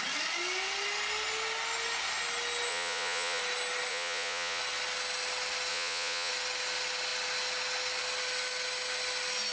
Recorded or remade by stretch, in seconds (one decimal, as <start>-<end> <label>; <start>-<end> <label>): 0.0-2.7 recorded; 2.7-3.4 remade; 3.4-3.9 recorded; 3.9-4.6 remade; 4.6-5.7 recorded; 5.7-6.3 remade; 6.3-9.5 recorded